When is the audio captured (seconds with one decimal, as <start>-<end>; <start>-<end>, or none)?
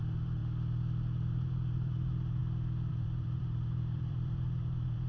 0.4-1.3; 2.4-2.9